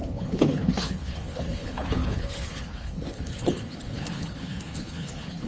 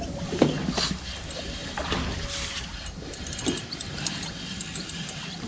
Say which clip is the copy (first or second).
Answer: first